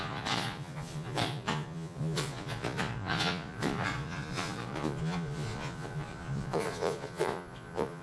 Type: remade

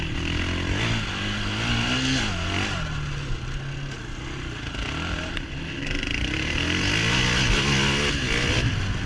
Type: recorded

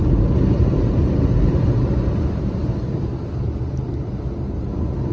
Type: recorded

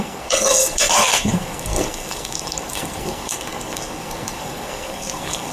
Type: remade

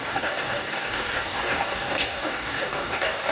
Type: remade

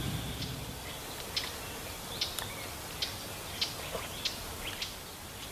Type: recorded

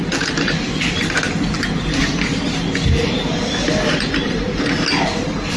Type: recorded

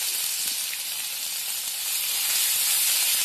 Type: recorded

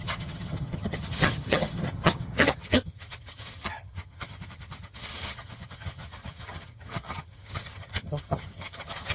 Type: remade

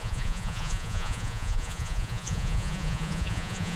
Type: remade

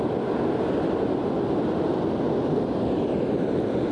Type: recorded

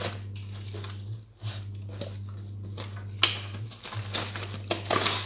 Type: recorded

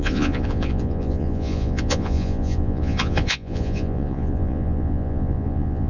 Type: remade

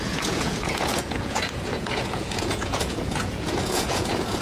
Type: remade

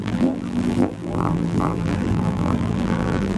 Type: remade